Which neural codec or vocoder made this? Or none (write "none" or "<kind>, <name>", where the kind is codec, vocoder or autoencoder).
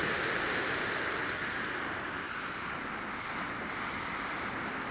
none